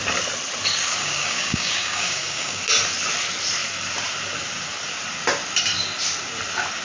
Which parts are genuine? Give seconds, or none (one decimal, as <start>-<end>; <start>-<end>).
0.0-1.0; 2.6-6.8